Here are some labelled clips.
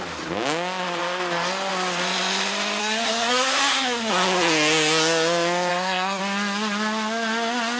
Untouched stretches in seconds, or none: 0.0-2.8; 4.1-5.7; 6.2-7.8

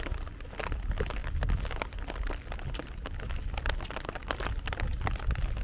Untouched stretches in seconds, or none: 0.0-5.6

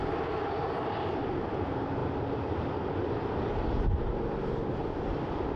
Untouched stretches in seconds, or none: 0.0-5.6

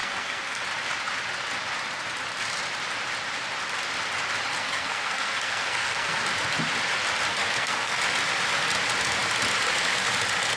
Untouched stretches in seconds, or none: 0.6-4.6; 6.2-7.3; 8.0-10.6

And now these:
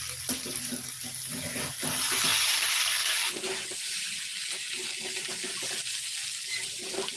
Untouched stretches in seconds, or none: 0.0-7.2

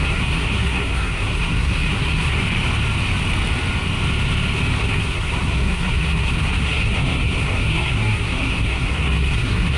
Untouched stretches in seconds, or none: 2.4-4.8